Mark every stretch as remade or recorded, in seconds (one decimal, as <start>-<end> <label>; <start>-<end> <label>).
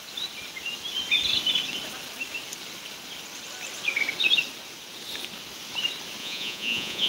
0.0-6.2 recorded; 6.2-7.1 remade